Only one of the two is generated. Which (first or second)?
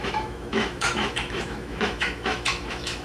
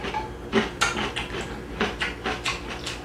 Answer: first